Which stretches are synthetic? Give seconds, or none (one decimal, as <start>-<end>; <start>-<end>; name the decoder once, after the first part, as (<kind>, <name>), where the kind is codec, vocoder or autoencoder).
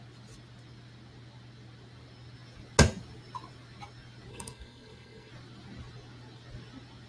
4.3-5.3 (codec, SNAC)